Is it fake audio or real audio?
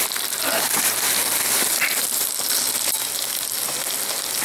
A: real